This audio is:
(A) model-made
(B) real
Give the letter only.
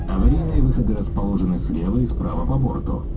B